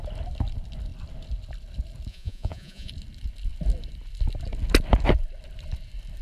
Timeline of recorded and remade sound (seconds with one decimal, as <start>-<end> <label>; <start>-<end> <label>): 0.0-2.1 recorded; 2.1-2.9 remade; 2.9-6.2 recorded